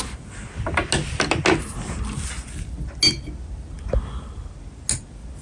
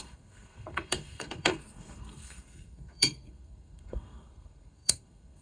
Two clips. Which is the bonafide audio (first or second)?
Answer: first